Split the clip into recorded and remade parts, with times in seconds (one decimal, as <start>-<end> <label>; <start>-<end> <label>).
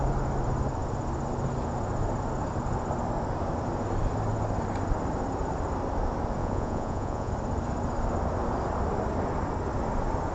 0.0-6.4 recorded; 6.4-7.3 remade; 7.3-10.3 recorded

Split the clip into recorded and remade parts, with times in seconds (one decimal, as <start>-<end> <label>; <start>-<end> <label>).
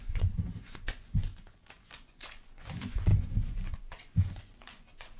0.0-5.2 remade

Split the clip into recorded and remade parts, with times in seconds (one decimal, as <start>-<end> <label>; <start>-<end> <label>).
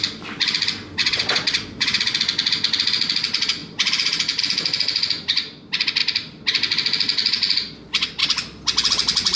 0.0-1.0 recorded; 1.0-2.0 remade; 2.0-9.4 recorded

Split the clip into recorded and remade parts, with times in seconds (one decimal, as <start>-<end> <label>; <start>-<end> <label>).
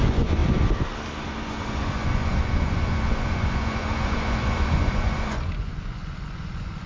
0.0-0.4 remade; 0.4-1.2 recorded; 1.2-6.9 remade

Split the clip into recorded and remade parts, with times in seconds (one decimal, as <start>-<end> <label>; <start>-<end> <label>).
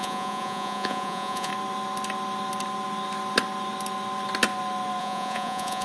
0.0-1.5 remade; 1.5-5.0 recorded; 5.0-5.8 remade